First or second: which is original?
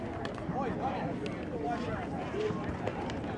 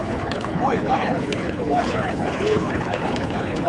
first